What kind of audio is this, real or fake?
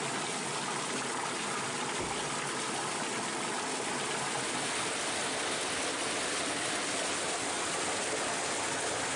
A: real